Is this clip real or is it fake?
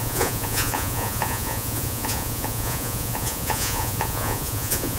fake